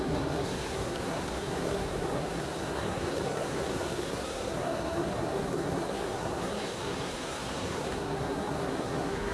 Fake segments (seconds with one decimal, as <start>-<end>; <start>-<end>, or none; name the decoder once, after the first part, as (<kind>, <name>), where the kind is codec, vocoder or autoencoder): 0.0-9.3 (codec, SNAC)